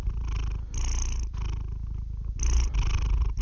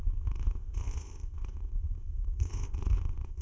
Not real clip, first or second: second